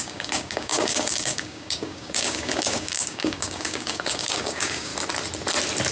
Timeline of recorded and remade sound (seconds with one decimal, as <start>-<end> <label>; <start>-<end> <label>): 0.0-4.9 remade; 4.9-5.9 recorded